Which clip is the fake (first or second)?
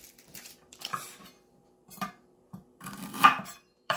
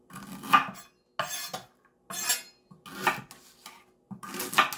first